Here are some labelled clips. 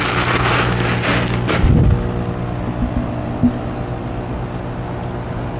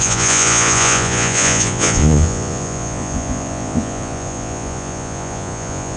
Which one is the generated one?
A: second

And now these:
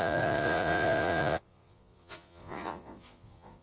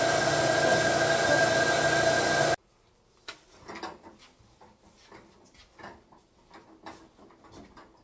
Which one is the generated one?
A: first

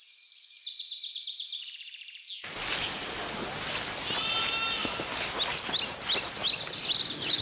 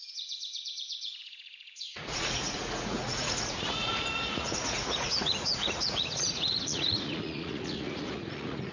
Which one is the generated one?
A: second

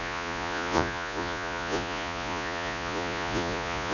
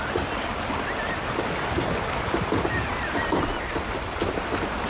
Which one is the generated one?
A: first